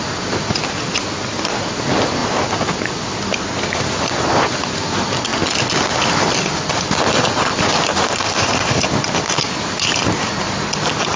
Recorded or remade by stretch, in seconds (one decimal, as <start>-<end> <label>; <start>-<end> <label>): 0.0-11.2 recorded